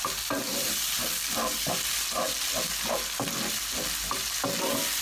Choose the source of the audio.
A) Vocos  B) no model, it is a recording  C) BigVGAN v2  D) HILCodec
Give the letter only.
B